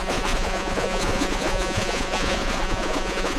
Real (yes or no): no